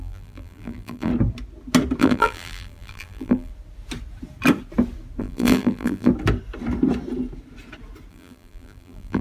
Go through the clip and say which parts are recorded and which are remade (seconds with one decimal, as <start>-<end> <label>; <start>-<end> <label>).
0.0-1.1 remade; 1.1-2.0 recorded; 2.0-3.5 remade; 3.5-5.2 recorded; 5.2-6.1 remade; 6.1-8.1 recorded; 8.1-9.2 remade